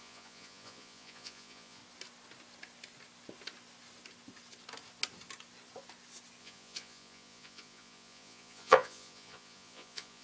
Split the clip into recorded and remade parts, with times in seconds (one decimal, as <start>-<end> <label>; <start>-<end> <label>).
0.0-1.8 remade; 1.8-6.4 recorded; 6.4-10.2 remade